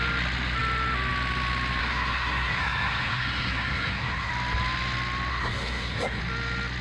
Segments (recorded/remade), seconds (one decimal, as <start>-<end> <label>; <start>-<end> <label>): 0.0-1.8 recorded; 1.8-4.3 remade; 4.3-5.3 recorded; 5.3-6.2 remade; 6.2-6.8 recorded